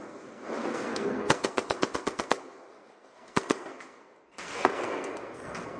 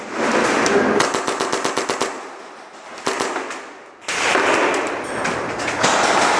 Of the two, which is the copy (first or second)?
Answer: first